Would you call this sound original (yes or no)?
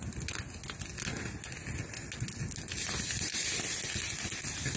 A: yes